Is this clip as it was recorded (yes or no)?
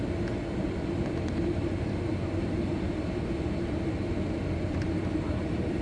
no